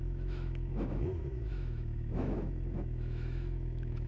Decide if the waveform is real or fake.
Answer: fake